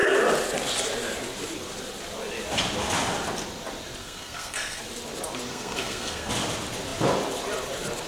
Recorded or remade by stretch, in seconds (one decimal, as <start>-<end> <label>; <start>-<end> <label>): 0.0-4.0 recorded; 4.0-4.8 remade; 4.8-5.5 recorded; 5.5-6.3 remade; 6.3-8.1 recorded